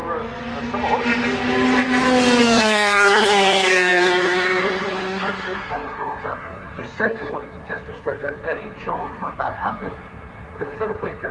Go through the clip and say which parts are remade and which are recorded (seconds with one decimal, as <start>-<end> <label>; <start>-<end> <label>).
0.0-2.4 recorded; 2.4-11.3 remade